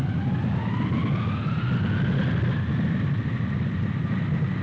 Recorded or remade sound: recorded